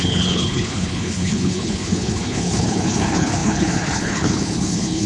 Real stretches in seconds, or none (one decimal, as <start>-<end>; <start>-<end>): none